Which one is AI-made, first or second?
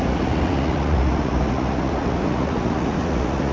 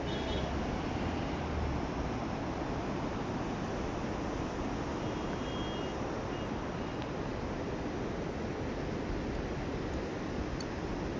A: first